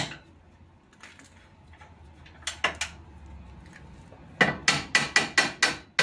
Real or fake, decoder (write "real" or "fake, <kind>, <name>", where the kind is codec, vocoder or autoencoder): real